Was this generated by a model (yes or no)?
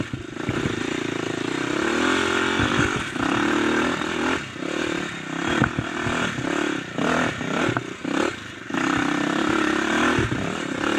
no